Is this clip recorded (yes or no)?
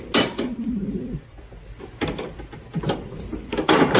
yes